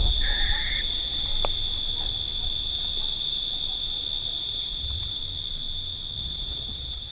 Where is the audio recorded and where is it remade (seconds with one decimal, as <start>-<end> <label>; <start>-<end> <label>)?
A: 0.0-1.3 remade; 1.3-4.4 recorded; 4.4-5.2 remade; 5.2-6.2 recorded; 6.2-7.1 remade